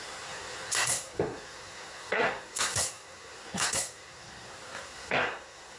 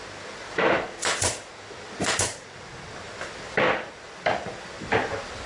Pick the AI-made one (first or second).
first